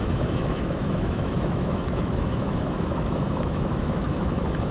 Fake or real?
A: fake